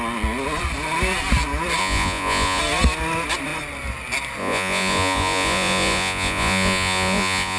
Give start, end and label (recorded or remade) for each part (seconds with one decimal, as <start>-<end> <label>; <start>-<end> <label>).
0.0-1.8 recorded; 1.8-2.6 remade; 2.6-4.4 recorded; 4.4-7.6 remade